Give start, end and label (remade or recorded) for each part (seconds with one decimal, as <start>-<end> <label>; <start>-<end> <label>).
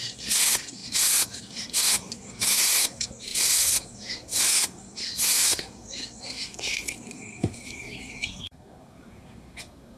0.0-10.0 remade